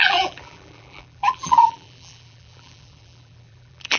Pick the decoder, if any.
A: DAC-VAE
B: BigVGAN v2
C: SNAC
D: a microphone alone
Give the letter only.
B